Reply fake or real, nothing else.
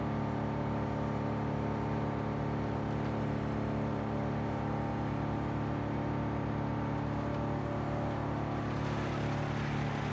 real